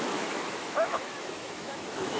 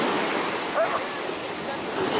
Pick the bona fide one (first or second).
second